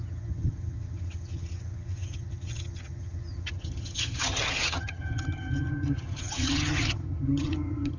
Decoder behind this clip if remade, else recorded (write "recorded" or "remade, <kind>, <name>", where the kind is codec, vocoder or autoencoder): remade, vocoder, HiFi-GAN